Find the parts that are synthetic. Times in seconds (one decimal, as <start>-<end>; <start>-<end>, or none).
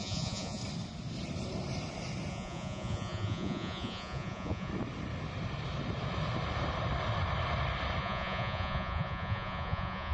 0.0-0.6; 2.3-4.7; 8.0-10.1